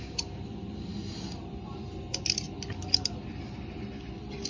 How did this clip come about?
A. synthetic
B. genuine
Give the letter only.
B